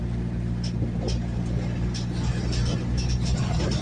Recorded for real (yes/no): yes